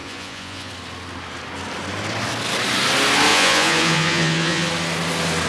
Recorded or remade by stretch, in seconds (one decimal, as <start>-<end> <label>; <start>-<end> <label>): 0.0-0.7 remade; 0.7-3.3 recorded; 3.3-4.7 remade; 4.7-5.5 recorded